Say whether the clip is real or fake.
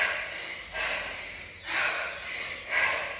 real